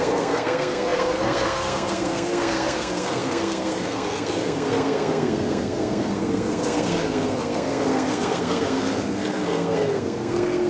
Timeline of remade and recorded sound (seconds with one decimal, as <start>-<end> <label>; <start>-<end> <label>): 0.0-10.7 remade